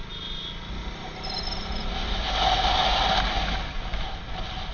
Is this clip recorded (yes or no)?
yes